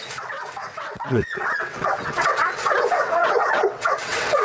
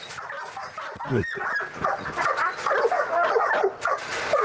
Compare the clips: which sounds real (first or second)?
second